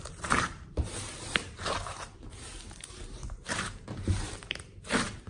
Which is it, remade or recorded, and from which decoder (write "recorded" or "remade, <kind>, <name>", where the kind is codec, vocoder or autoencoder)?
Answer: remade, vocoder, BigVGAN v2